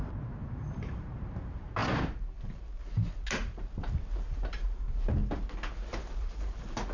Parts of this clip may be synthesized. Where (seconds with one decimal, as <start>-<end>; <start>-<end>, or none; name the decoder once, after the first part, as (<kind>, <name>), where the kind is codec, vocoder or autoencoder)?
0.0-5.2 (vocoder, BigVGAN v2); 5.9-6.9